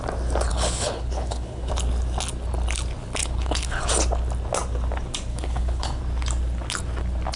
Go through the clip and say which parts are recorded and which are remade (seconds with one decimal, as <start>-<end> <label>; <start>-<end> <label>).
0.0-0.5 recorded; 0.5-1.7 remade; 1.7-3.2 recorded; 3.2-3.9 remade; 3.9-5.3 recorded; 5.3-6.0 remade; 6.0-7.4 recorded